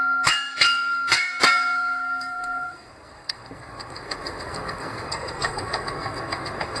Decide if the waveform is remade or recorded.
remade